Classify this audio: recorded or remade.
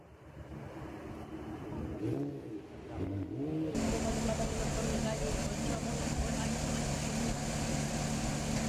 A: recorded